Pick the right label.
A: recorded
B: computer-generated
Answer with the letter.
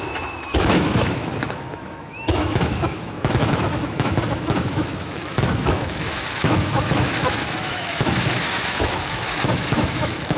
B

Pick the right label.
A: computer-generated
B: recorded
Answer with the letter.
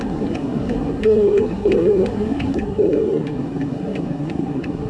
A